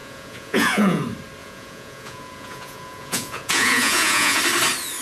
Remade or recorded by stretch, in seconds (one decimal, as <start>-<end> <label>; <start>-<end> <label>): 0.0-1.0 remade; 1.0-1.4 recorded; 1.4-4.4 remade; 4.4-5.0 recorded